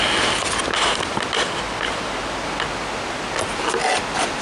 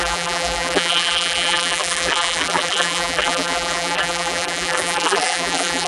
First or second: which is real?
first